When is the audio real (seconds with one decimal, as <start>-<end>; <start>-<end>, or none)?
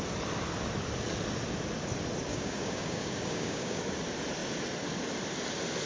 0.0-2.3; 3.8-5.9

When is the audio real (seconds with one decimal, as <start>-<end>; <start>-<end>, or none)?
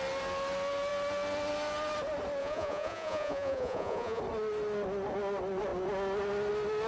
0.0-2.4; 4.2-6.9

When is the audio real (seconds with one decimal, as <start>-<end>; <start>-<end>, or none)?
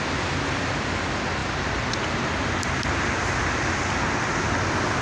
0.0-5.0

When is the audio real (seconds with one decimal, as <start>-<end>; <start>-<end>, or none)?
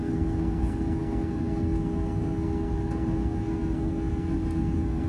none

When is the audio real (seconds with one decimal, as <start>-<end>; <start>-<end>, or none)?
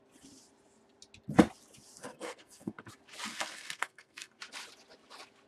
0.0-2.0; 2.9-3.3; 4.4-5.5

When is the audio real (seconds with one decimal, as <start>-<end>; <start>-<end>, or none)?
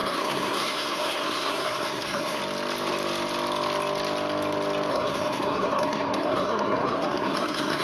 2.4-4.9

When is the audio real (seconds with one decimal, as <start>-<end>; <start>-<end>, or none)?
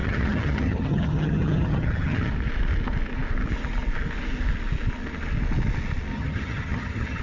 2.3-6.1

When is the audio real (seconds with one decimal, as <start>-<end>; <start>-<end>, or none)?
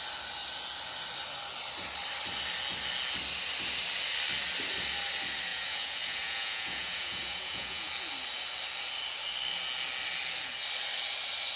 0.0-5.5; 7.9-11.6